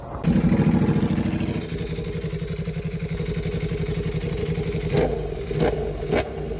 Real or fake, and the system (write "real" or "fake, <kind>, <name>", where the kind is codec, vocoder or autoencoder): real